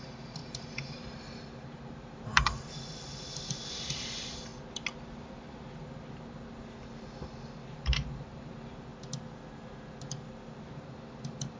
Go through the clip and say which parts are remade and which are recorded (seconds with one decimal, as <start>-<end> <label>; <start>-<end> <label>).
0.0-4.5 remade; 4.5-7.7 recorded; 7.7-8.9 remade; 8.9-10.7 recorded; 10.7-11.6 remade